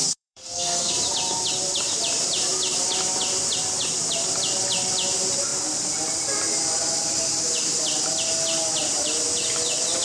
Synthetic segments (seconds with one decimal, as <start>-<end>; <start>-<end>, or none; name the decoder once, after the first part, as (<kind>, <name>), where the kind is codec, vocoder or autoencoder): 0.0-0.9 (codec, SNAC)